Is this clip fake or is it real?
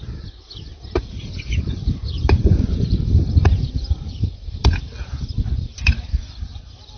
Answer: fake